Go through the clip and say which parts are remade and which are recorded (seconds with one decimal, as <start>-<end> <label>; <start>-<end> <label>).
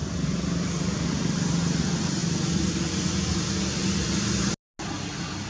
0.0-5.5 recorded